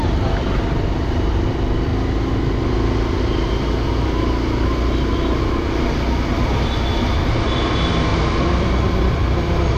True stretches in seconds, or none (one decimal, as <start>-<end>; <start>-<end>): 1.9-6.8